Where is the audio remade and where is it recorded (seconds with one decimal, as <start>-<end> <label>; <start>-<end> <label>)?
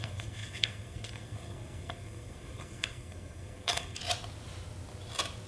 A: 0.0-4.0 remade; 4.0-5.5 recorded